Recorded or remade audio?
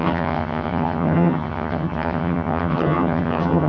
remade